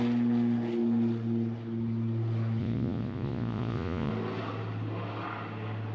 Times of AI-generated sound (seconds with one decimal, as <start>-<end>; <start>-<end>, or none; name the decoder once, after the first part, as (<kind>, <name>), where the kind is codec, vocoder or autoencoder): 2.6-4.1 (vocoder, Vocos)